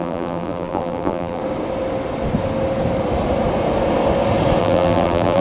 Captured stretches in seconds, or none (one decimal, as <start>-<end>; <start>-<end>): 1.4-4.6